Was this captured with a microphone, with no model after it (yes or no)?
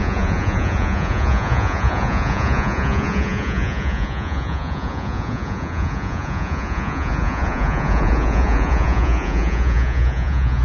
no